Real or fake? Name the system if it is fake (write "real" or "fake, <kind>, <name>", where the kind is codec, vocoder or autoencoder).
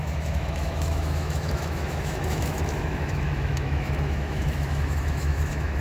fake, autoencoder, DAC-VAE